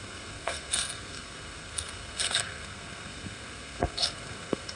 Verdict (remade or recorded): remade